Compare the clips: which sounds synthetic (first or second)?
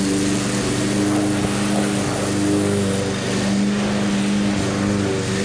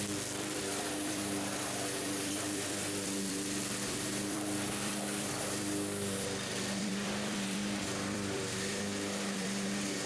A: second